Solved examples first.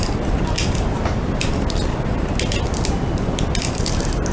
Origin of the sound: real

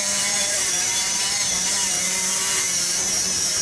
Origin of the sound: fake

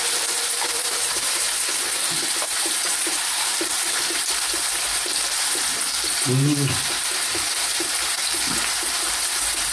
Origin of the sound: fake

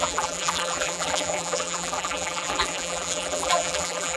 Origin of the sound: fake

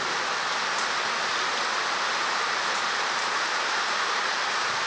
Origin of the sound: real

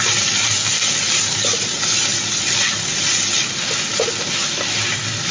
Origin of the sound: real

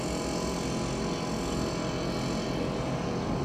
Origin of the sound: real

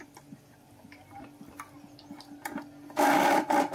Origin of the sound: real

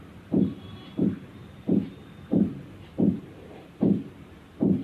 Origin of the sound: fake